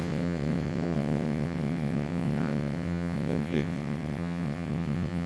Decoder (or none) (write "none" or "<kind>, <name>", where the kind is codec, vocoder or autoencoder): vocoder, WaveNeXt